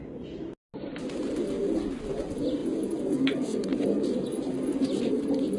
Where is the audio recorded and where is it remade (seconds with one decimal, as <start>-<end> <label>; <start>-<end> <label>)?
0.0-5.6 recorded